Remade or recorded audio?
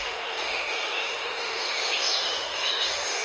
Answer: remade